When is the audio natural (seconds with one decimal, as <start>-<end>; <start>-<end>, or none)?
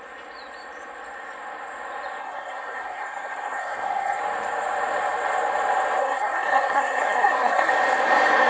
0.0-2.2; 4.2-6.0; 7.7-8.5